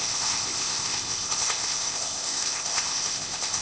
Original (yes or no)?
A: no